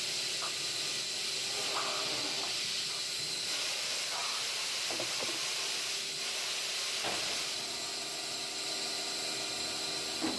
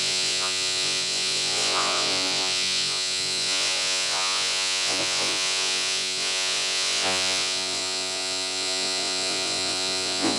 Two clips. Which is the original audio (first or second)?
first